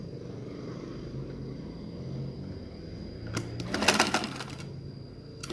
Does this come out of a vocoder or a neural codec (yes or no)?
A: no